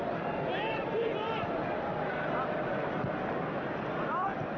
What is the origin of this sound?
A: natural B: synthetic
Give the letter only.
A